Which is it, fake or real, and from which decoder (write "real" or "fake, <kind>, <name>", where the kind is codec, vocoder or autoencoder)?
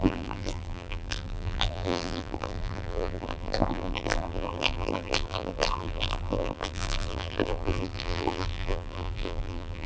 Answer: fake, vocoder, BigVGAN v2